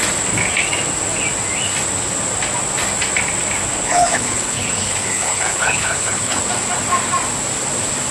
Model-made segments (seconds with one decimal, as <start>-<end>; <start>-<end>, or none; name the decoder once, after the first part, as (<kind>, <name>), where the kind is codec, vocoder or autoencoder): 3.7-6.4 (codec, HILCodec)